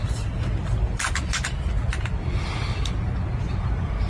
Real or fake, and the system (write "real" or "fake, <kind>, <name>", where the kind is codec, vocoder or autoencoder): real